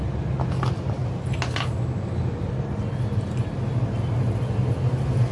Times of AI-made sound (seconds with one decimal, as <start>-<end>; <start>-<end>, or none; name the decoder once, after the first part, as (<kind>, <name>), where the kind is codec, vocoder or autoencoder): none